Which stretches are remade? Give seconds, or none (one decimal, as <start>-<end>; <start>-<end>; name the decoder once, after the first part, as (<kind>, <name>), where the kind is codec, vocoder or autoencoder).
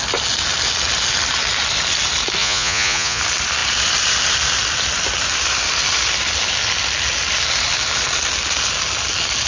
2.4-3.2 (vocoder, Vocos)